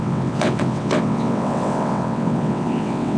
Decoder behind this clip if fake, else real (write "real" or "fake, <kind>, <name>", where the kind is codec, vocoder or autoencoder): fake, vocoder, WaveNeXt